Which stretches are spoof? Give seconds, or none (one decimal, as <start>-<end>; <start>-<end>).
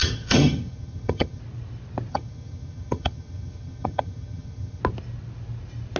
0.0-1.4; 2.1-4.8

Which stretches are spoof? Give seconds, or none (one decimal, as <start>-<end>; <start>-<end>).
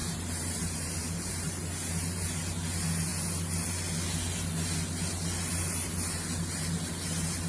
0.0-1.5